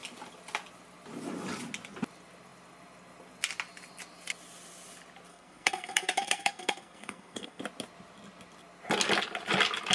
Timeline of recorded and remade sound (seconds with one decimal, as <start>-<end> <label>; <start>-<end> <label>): 0.0-5.3 recorded; 5.3-7.6 remade; 7.6-9.9 recorded